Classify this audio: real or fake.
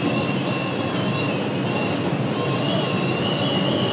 real